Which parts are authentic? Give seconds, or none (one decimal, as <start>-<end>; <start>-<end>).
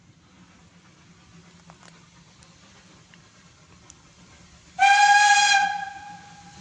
0.0-6.6